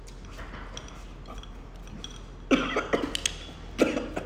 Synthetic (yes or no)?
no